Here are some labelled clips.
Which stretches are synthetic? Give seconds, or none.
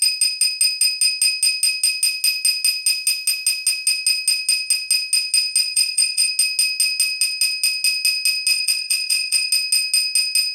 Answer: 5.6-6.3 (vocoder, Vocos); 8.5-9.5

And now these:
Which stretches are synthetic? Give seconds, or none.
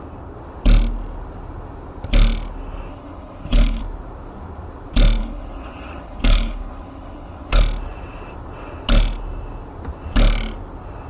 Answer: 2.9-3.8 (codec, HILCodec); 5.2-7.6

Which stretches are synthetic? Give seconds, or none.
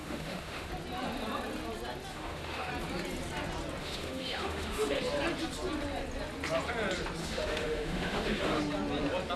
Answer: 0.0-0.7 (autoencoder, DAC-VAE); 2.1-2.7; 3.8-5.0; 7.2-8.6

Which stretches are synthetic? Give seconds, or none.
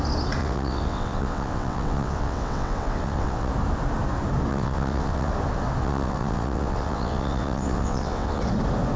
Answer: 0.4-3.5 (vocoder, WaveNeXt); 4.5-5.3; 5.8-8.4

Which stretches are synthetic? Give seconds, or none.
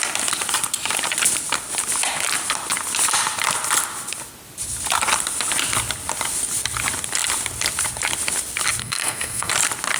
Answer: 8.8-9.5 (codec, SNAC)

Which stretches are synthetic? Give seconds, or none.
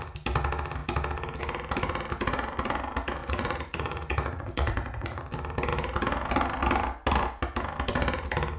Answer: 3.2-5.2 (vocoder, Vocos)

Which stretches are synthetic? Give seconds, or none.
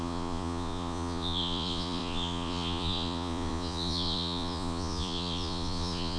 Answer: 0.0-6.2 (vocoder, Vocos)